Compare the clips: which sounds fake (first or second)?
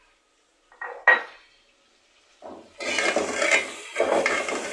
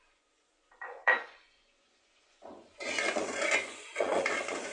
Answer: second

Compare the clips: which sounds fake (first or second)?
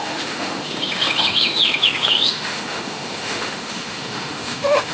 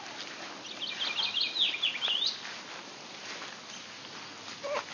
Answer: first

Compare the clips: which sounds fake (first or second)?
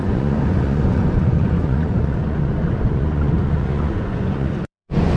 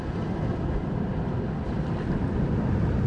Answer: first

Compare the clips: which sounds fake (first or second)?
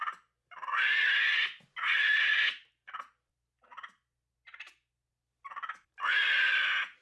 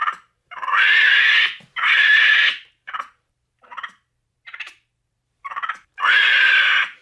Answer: second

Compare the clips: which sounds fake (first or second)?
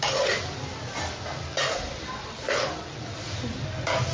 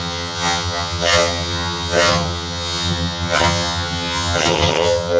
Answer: second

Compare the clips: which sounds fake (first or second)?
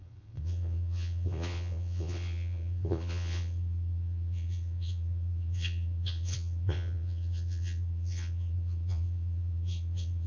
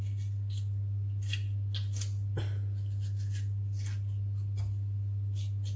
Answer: first